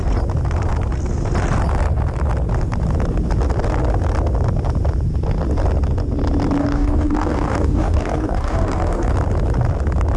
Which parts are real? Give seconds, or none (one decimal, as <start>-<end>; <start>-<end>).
0.0-6.6; 9.1-10.2